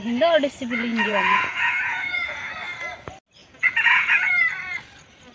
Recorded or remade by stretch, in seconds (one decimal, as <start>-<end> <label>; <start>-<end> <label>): 0.0-0.9 recorded; 0.9-2.5 remade; 2.5-3.4 recorded; 3.4-4.3 remade; 4.3-5.3 recorded

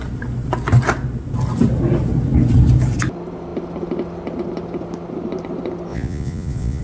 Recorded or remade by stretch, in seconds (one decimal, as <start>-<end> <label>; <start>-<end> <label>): 0.0-5.9 recorded; 5.9-6.8 remade

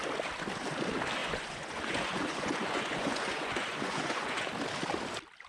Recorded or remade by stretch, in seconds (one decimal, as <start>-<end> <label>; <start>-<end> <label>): 0.0-1.2 recorded; 1.2-4.5 remade; 4.5-5.5 recorded

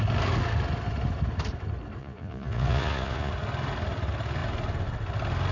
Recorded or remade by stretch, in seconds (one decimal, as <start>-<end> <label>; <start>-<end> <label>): 0.0-2.0 recorded; 2.0-3.3 remade; 3.3-5.5 recorded